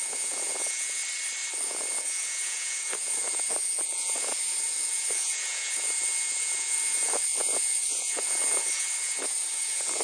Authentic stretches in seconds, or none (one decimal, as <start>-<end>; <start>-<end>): 1.0-1.6